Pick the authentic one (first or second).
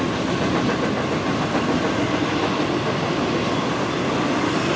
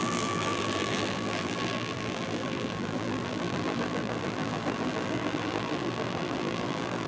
first